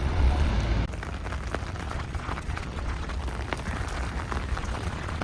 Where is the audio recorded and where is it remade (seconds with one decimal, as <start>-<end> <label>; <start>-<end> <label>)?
0.0-0.5 remade; 0.5-1.8 recorded; 1.8-3.2 remade; 3.2-4.6 recorded; 4.6-5.2 remade